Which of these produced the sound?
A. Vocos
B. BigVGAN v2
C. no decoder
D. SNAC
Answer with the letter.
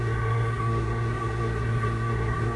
D